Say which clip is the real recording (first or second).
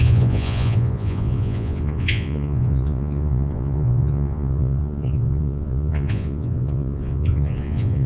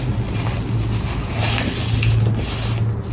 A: second